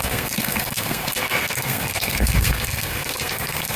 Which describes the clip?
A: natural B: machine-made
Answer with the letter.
B